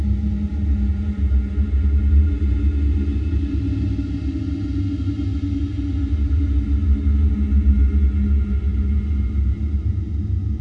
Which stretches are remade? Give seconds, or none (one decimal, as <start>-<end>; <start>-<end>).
none